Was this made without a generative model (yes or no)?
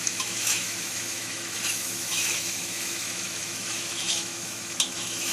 no